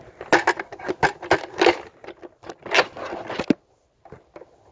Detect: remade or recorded recorded